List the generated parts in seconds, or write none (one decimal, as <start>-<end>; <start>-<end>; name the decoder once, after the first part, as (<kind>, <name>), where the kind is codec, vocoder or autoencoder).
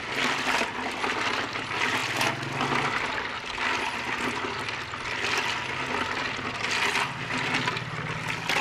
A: none